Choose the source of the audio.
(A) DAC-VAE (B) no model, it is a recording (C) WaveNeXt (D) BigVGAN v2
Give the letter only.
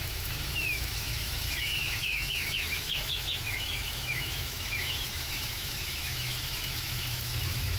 A